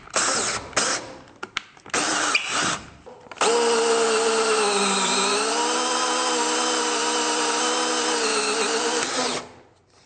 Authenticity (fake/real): real